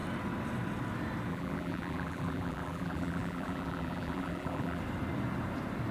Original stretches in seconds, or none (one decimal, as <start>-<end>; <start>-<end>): 0.0-1.3; 4.8-5.9